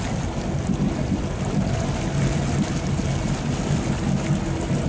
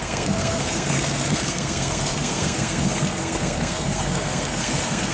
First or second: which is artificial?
second